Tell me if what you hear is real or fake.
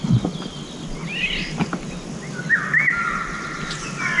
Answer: real